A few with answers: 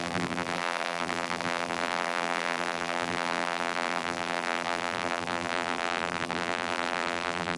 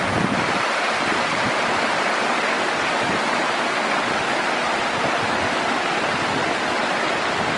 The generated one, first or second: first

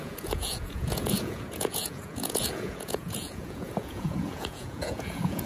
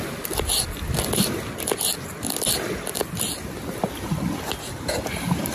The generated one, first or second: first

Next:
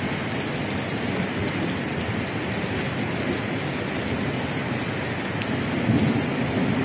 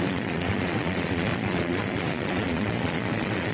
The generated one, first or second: second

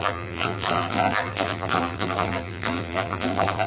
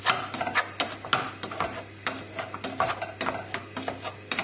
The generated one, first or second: first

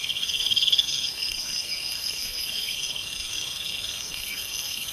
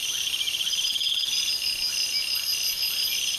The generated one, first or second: first